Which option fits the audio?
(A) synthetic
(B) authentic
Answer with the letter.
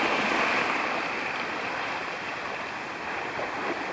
B